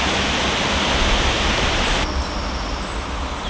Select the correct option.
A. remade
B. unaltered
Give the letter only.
B